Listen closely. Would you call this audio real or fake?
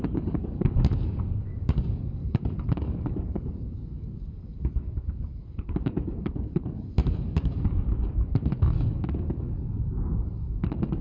fake